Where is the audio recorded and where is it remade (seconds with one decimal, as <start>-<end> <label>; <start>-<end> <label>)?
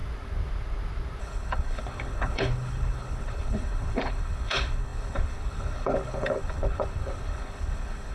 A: 0.0-1.2 recorded; 1.2-8.1 remade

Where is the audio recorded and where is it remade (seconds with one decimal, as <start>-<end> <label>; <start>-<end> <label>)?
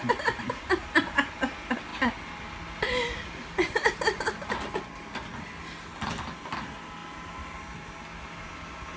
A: 0.0-9.0 recorded